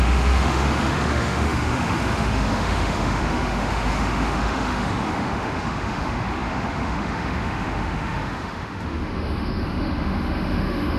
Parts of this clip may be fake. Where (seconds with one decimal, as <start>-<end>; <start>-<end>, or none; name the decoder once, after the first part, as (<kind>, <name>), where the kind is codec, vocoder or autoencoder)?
0.0-11.0 (autoencoder, DAC-VAE)